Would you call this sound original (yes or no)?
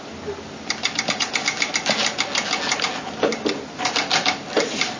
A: yes